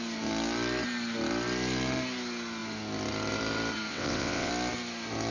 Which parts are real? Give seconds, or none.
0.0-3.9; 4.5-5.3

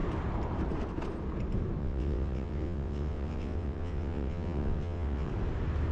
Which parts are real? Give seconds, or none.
0.0-1.8; 5.3-5.9

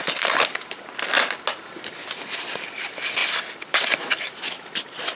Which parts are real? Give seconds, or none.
0.0-5.2

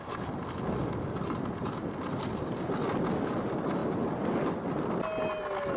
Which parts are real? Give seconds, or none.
0.0-5.8

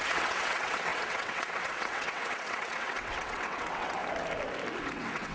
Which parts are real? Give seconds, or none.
4.0-4.8